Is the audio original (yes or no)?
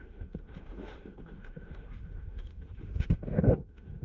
no